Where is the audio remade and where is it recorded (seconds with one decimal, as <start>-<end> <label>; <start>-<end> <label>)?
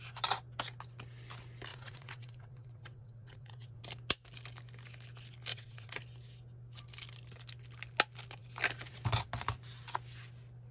0.0-1.7 recorded; 1.7-3.8 remade; 3.8-5.5 recorded; 5.5-6.0 remade; 6.0-10.7 recorded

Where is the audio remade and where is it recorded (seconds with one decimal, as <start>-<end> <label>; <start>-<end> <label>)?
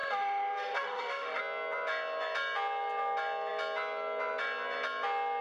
0.0-1.4 remade; 1.4-5.4 recorded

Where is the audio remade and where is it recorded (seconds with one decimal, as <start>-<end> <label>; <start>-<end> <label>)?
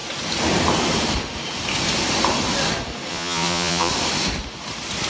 0.0-3.1 recorded; 3.1-3.9 remade; 3.9-5.1 recorded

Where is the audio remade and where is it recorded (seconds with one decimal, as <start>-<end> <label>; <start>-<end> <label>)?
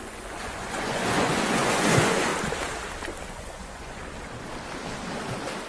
0.0-2.3 remade; 2.3-3.3 recorded; 3.3-4.0 remade; 4.0-5.7 recorded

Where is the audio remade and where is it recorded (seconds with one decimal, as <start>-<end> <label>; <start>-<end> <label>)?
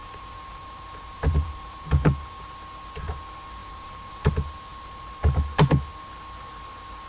0.0-2.3 remade; 2.3-3.6 recorded; 3.6-4.3 remade; 4.3-7.1 recorded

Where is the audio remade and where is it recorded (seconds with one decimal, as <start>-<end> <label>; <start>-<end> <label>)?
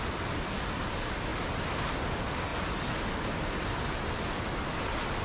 0.0-5.2 recorded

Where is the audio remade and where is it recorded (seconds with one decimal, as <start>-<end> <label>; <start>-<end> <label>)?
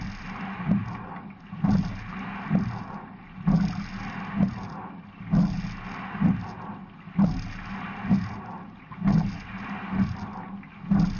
0.0-11.2 recorded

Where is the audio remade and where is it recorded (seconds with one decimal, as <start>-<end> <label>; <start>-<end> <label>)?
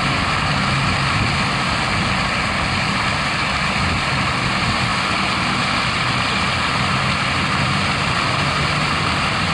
0.0-9.5 recorded